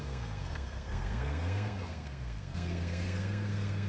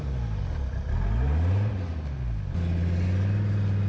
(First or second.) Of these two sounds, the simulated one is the first